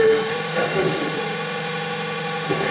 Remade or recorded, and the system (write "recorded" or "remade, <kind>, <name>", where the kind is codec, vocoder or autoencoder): remade, autoencoder, DAC-VAE